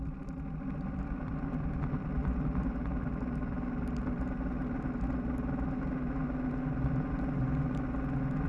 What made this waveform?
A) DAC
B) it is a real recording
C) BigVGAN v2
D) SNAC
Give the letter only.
B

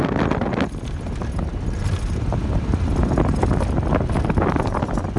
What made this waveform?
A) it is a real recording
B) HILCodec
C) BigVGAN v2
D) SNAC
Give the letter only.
A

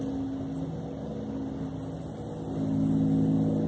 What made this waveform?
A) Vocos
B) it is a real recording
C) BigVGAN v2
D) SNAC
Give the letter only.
B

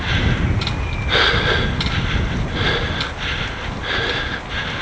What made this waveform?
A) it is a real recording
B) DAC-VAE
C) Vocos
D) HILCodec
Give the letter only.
A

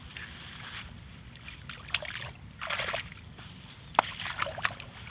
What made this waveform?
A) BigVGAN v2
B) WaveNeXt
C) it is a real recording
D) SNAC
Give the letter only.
C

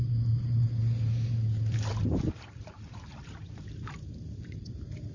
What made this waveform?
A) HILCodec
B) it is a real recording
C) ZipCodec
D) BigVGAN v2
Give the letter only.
D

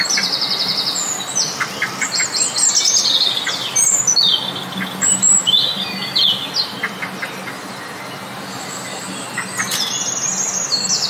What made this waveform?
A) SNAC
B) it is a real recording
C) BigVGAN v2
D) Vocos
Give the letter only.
B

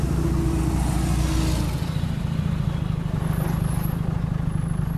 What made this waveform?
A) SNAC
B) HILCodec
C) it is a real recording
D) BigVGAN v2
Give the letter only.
C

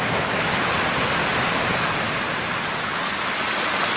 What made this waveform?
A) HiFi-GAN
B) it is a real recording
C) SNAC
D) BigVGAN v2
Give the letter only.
B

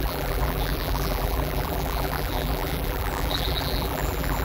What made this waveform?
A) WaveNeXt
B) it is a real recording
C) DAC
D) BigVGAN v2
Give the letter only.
D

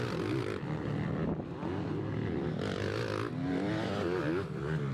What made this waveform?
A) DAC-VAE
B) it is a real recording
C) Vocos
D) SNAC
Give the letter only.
B